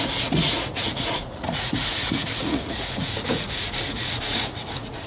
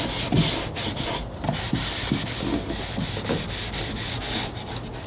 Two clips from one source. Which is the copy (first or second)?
first